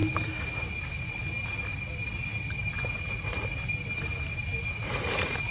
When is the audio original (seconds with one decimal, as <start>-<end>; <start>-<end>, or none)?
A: 0.0-5.5